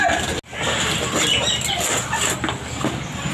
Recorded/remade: recorded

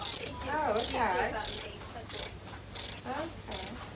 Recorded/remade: recorded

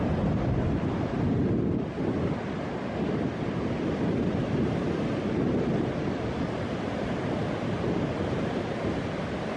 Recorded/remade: recorded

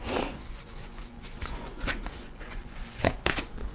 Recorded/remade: remade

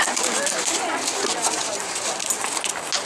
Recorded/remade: recorded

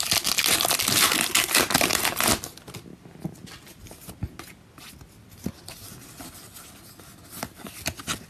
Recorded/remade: recorded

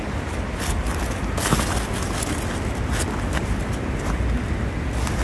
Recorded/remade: recorded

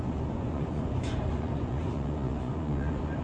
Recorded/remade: remade